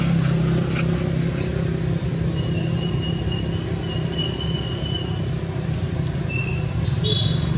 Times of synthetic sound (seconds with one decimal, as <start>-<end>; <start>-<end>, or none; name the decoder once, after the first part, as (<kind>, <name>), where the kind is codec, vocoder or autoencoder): none